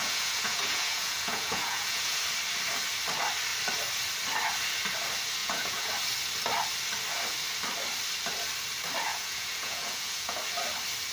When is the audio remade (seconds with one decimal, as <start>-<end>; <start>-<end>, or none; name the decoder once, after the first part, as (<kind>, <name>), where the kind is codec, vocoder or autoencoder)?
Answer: 0.0-2.2 (vocoder, Vocos); 5.4-5.9; 9.1-10.4